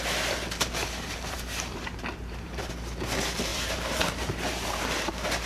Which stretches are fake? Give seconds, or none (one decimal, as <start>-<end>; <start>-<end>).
0.8-2.7; 3.5-5.1